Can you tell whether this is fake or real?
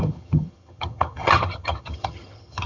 fake